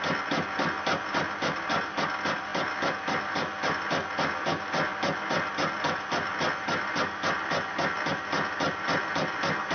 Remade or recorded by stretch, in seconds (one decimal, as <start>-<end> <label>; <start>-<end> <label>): 0.0-9.7 recorded

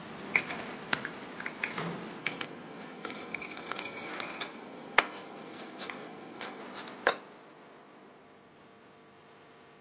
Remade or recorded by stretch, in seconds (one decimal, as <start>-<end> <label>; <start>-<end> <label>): 0.0-2.2 recorded; 2.2-4.1 remade; 4.1-4.5 recorded; 4.5-6.6 remade; 6.6-9.8 recorded

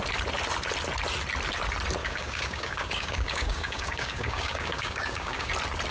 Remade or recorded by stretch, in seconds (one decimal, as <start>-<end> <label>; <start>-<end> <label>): 0.0-2.0 recorded; 2.0-5.5 remade; 5.5-5.9 recorded

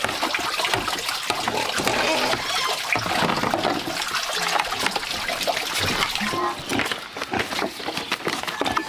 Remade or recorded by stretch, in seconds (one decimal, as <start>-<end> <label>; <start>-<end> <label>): 0.0-8.9 recorded

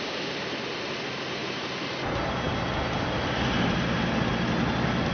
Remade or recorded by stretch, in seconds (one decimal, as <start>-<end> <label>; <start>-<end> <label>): 0.0-5.1 recorded